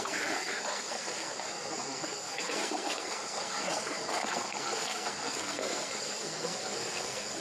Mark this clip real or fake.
fake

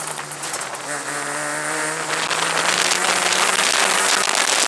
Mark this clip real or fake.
real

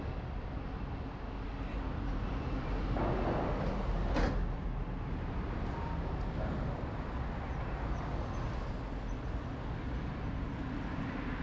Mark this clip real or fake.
real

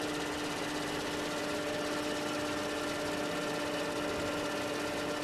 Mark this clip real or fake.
real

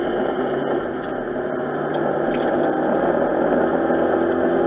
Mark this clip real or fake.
real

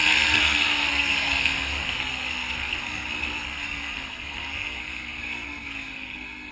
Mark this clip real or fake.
fake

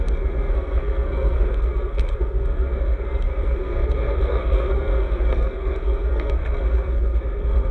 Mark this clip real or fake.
fake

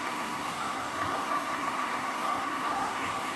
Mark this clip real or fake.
fake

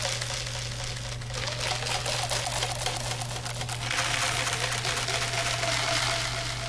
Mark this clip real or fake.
real